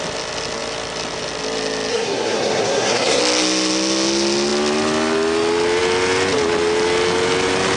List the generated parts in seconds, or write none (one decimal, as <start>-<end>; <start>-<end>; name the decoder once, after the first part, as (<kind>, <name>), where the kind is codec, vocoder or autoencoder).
1.9-3.2 (codec, SNAC)